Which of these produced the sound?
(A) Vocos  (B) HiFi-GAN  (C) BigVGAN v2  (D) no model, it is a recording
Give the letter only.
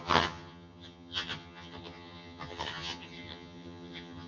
B